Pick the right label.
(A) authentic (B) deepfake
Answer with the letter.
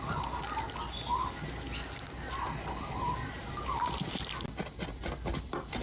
A